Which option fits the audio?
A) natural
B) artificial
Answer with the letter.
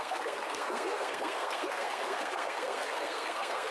B